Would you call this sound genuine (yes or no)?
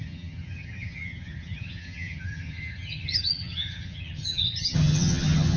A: no